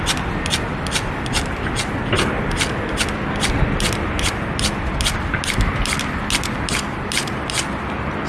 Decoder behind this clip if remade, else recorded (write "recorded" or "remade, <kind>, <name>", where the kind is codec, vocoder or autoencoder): recorded